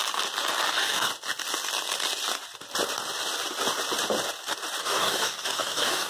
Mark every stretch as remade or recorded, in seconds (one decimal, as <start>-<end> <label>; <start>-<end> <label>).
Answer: 0.0-0.7 recorded; 0.7-1.1 remade; 1.1-4.8 recorded; 4.8-6.1 remade